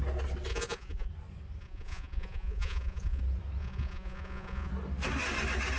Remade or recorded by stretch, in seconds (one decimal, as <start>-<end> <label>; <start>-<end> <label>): 0.0-0.5 recorded; 0.5-1.1 remade; 1.1-1.6 recorded; 1.6-3.2 remade; 3.2-3.6 recorded; 3.6-4.7 remade; 4.7-5.8 recorded

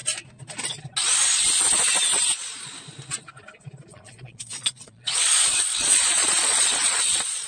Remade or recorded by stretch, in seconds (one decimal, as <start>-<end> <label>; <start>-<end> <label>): 0.0-3.9 recorded; 3.9-7.5 remade